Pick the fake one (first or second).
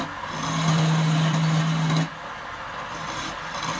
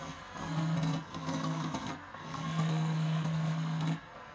second